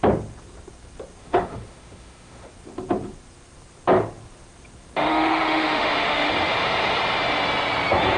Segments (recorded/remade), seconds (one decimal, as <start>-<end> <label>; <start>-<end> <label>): 0.0-1.2 recorded; 1.2-2.5 remade; 2.5-5.1 recorded; 5.1-6.3 remade; 6.3-8.2 recorded